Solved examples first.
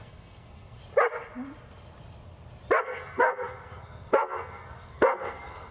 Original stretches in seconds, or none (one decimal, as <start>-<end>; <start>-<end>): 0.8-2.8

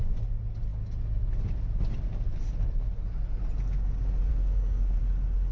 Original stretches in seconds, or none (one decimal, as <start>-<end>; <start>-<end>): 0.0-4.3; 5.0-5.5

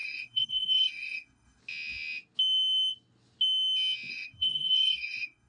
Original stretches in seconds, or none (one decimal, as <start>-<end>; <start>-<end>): 1.6-4.1

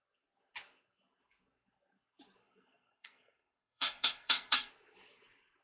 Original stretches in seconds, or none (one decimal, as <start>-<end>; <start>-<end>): 0.0-2.4; 4.7-5.6